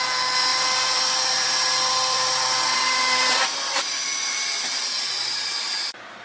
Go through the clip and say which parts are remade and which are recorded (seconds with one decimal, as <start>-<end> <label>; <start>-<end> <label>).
0.0-0.5 recorded; 0.5-3.3 remade; 3.3-6.2 recorded